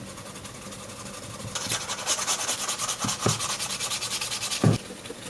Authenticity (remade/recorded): recorded